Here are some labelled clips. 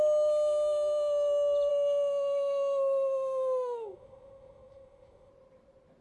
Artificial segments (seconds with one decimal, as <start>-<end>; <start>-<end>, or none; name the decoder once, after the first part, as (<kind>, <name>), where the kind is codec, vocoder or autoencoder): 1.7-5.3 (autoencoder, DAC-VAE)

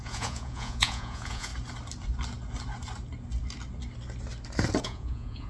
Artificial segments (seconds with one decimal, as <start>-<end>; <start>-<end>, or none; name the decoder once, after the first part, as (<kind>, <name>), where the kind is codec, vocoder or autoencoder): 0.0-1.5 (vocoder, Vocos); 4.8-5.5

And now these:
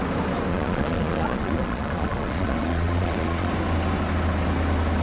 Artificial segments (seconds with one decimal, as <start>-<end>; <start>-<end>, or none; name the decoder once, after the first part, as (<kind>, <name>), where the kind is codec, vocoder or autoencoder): 0.5-3.5 (vocoder, Vocos)

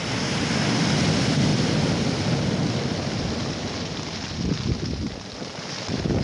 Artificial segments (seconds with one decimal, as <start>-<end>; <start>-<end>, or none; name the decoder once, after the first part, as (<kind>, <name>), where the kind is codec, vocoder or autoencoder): none